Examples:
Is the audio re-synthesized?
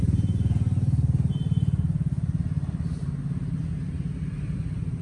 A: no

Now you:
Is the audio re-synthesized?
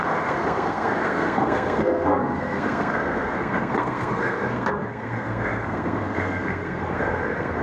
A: yes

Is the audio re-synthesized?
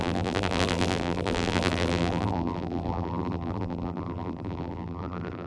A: yes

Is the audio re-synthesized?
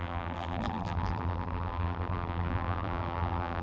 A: yes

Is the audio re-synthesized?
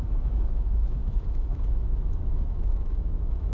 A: yes